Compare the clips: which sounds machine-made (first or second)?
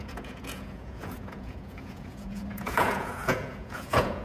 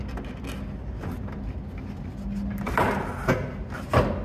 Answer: first